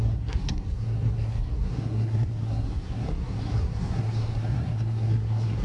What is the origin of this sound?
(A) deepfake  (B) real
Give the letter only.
A